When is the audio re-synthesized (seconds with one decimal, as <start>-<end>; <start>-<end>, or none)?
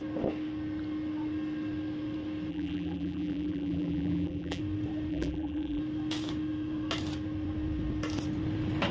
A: 2.5-4.6; 5.1-5.8